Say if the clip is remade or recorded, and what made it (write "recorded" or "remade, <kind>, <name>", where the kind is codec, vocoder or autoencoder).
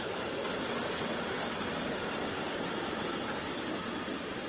recorded